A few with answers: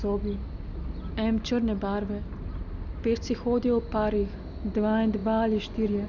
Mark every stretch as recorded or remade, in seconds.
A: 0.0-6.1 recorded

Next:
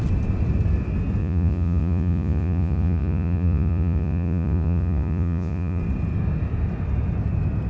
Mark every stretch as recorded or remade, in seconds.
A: 0.0-1.2 recorded; 1.2-5.8 remade; 5.8-7.7 recorded

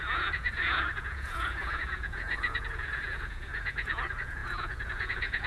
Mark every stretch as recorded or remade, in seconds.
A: 0.0-5.5 remade

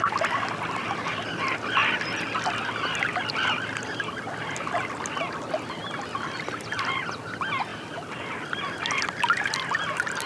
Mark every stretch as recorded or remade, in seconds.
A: 0.0-10.3 recorded